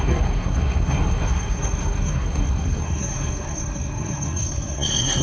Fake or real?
fake